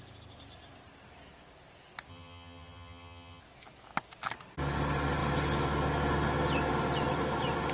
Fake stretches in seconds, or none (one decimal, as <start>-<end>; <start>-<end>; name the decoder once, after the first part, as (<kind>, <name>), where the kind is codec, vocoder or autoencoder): 2.1-3.4 (vocoder, HiFi-GAN)

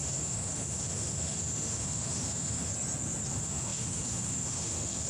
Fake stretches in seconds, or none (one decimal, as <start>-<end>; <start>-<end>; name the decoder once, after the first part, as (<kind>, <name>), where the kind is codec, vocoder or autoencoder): 0.0-2.7 (autoencoder, DAC-VAE); 3.3-5.1

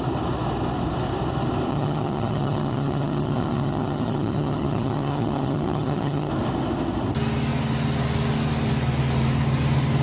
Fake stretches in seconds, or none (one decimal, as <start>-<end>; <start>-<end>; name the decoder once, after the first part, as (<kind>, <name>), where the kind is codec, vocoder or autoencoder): 1.7-6.3 (vocoder, HiFi-GAN)

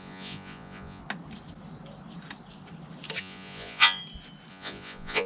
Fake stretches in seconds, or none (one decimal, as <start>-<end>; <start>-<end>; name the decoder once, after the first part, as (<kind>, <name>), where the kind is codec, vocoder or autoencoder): 0.0-1.0 (vocoder, Vocos); 3.2-4.0; 4.5-5.3

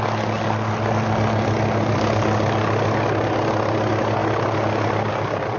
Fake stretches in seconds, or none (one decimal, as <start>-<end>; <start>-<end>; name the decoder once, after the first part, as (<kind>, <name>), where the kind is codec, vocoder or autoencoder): none

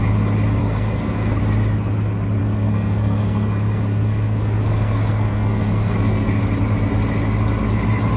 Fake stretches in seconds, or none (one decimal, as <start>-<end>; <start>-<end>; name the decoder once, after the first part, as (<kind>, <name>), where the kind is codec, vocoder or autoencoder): 0.6-1.4 (codec, SNAC); 2.4-6.4